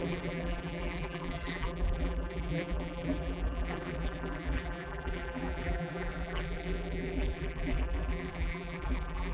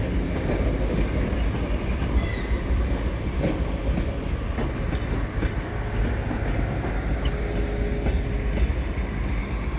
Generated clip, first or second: first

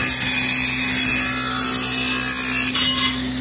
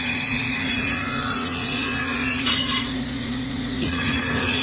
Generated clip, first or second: second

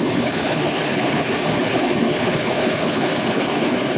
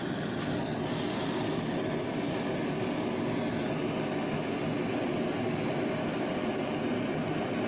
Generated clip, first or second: first